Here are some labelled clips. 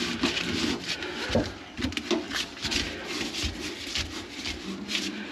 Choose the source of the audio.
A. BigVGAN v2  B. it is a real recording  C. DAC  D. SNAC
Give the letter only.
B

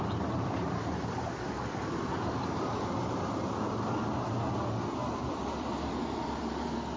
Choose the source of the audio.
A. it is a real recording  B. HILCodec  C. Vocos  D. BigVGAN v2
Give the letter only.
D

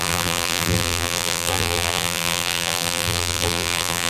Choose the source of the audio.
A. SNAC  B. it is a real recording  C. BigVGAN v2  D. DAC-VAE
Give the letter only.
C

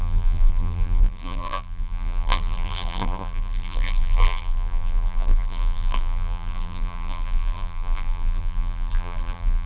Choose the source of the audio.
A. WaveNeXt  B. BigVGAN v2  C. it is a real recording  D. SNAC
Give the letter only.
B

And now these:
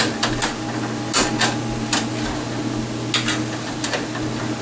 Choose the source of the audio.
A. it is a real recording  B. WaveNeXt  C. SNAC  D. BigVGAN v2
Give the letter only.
A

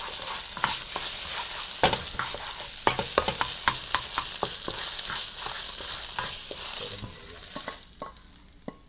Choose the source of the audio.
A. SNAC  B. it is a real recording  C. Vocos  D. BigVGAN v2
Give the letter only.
B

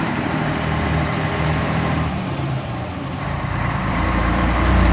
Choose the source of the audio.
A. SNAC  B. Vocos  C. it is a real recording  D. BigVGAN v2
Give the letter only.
D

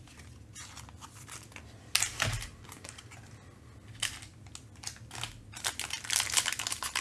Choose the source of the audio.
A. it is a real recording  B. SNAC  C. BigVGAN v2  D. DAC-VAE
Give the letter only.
A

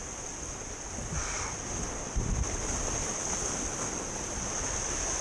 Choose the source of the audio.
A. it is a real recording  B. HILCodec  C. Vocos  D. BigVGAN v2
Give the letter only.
A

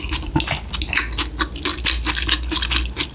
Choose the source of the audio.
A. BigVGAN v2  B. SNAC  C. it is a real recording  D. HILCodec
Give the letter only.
C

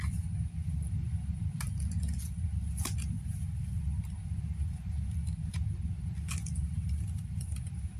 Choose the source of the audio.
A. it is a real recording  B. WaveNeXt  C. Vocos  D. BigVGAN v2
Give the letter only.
A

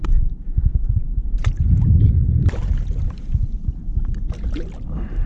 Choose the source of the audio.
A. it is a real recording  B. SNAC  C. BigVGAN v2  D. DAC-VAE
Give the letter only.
C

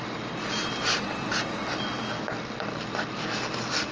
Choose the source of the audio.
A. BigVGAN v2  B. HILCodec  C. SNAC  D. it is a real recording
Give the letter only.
A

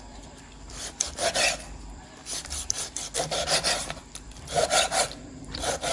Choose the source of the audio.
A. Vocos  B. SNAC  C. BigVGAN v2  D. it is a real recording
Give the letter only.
C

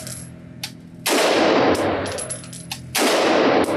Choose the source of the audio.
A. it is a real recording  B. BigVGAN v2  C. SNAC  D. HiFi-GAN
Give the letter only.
A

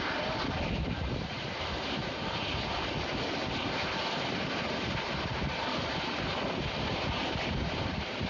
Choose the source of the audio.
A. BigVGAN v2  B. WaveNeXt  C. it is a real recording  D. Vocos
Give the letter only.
A